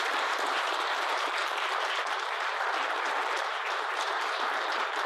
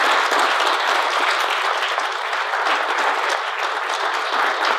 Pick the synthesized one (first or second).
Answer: first